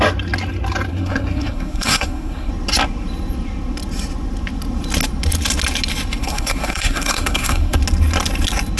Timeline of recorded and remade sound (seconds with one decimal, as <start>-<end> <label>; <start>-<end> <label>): 0.0-0.9 recorded; 0.9-2.5 remade; 2.5-6.2 recorded; 6.2-7.8 remade; 7.8-8.8 recorded